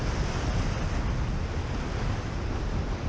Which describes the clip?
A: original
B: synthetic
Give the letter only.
A